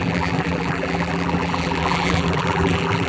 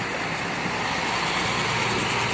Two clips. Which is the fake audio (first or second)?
first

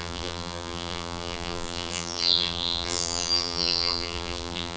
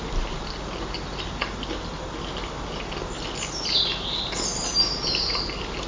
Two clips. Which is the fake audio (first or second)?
first